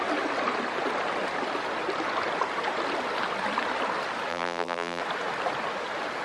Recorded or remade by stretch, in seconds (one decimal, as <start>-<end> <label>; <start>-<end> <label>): 0.0-4.3 recorded; 4.3-5.0 remade; 5.0-6.2 recorded